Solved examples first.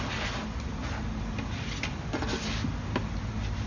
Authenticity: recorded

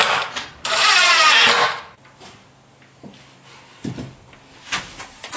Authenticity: recorded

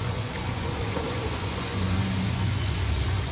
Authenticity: remade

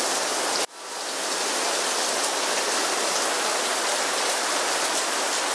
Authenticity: recorded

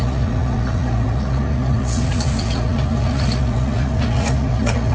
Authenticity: remade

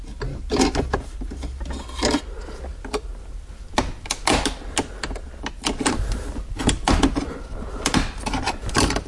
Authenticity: recorded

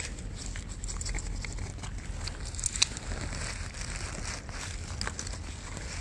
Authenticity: recorded